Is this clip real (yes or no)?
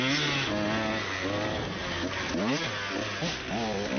yes